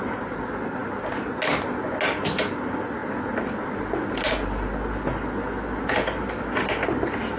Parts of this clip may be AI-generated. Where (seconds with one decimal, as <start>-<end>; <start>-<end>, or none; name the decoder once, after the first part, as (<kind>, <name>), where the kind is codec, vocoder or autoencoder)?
none